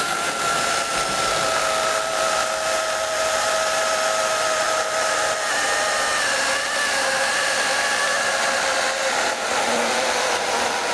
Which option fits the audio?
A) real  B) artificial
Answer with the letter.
A